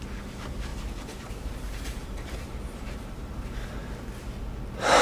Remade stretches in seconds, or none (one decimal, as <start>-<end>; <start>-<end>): 0.7-1.3; 2.0-4.0